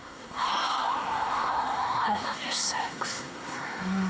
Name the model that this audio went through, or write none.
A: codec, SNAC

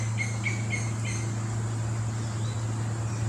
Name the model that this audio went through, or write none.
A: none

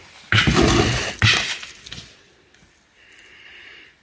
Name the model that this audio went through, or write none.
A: none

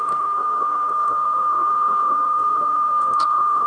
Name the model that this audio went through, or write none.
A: codec, SNAC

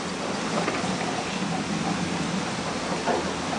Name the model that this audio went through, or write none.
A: none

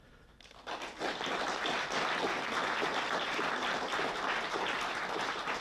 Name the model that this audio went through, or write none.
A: none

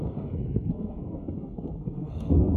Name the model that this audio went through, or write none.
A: codec, SNAC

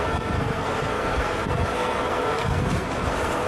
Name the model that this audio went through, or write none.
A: codec, SNAC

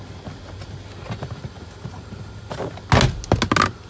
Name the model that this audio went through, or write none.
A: none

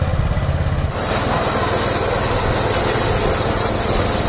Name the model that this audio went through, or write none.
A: none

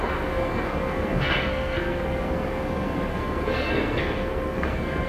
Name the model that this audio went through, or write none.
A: codec, SNAC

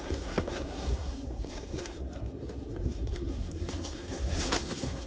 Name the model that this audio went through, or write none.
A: codec, SNAC